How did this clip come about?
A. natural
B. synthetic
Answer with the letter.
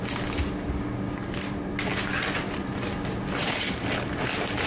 A